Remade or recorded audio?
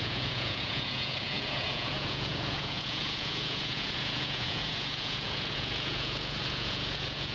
remade